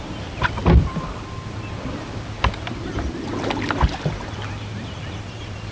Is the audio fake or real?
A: fake